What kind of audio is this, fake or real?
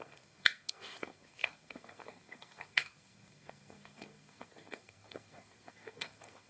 fake